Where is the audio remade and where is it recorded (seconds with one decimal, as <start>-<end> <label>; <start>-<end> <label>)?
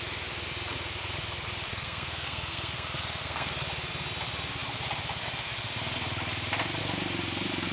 0.0-1.7 recorded; 1.7-3.5 remade; 3.5-7.7 recorded